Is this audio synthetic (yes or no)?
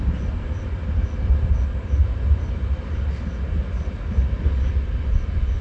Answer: no